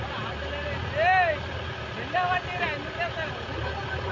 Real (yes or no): yes